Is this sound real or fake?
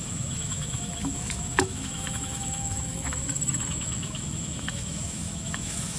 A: fake